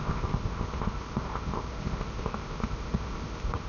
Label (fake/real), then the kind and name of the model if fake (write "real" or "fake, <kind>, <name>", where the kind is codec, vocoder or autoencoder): fake, codec, ZipCodec